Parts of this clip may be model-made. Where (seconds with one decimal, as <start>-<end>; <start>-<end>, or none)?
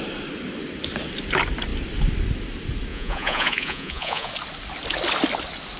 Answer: 2.9-4.3